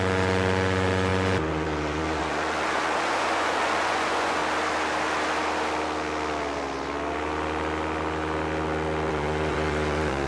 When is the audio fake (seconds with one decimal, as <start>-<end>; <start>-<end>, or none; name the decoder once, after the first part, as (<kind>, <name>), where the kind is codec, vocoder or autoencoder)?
0.0-4.4 (vocoder, Vocos); 9.1-10.3